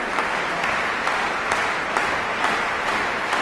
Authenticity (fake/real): real